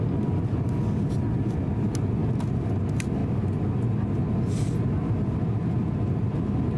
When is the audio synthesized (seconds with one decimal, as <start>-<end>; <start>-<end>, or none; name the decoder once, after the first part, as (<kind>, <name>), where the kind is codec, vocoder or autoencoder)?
none